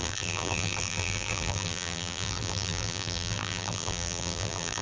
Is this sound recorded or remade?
remade